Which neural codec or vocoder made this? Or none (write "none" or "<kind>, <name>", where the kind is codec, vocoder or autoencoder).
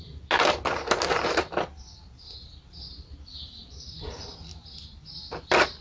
none